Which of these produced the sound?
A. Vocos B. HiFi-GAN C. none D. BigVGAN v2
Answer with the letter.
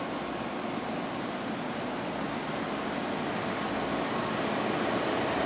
C